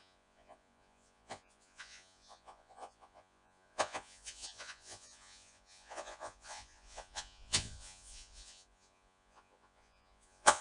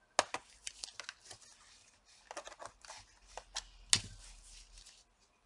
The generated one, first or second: first